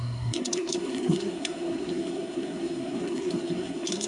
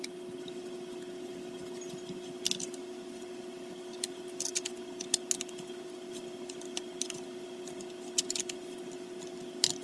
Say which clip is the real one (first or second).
second